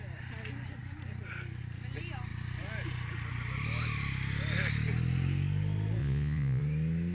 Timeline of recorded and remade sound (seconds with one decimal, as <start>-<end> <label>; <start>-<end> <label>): 0.0-6.0 recorded; 6.0-6.6 remade; 6.6-7.1 recorded